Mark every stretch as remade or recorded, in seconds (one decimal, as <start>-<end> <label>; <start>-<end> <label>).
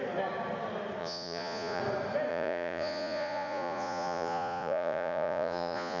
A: 0.0-1.0 recorded; 1.0-1.8 remade; 1.8-2.3 recorded; 2.3-6.0 remade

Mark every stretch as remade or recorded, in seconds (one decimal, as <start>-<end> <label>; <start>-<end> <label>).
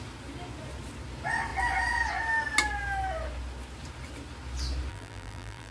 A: 0.0-4.9 recorded; 4.9-5.7 remade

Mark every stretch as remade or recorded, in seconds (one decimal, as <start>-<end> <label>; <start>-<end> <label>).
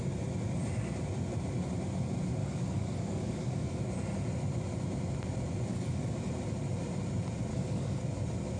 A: 0.0-2.4 recorded; 2.4-3.8 remade; 3.8-5.7 recorded; 5.7-6.3 remade; 6.3-7.5 recorded; 7.5-8.0 remade; 8.0-8.6 recorded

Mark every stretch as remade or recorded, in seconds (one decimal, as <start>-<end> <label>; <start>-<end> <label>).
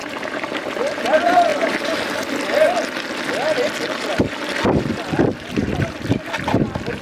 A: 0.0-0.7 remade; 0.7-7.0 recorded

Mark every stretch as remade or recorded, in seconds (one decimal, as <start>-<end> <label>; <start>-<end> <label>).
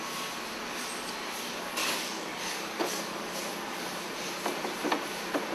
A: 0.0-1.8 recorded; 1.8-4.3 remade; 4.3-5.5 recorded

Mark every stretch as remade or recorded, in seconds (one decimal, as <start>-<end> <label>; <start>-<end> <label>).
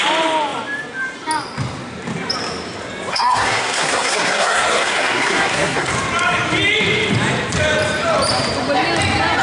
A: 0.0-3.1 recorded; 3.1-5.9 remade; 5.9-9.4 recorded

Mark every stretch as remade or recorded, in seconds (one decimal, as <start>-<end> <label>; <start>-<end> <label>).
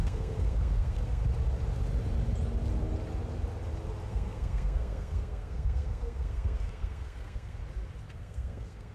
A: 0.0-1.2 remade; 1.2-4.1 recorded; 4.1-7.6 remade; 7.6-8.1 recorded; 8.1-8.9 remade